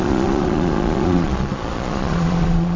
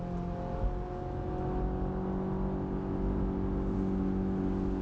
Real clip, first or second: second